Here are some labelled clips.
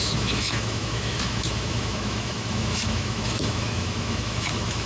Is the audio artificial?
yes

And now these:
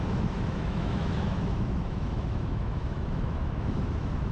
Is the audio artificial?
yes